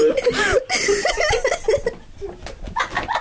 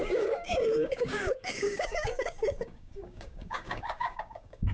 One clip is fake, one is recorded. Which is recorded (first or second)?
first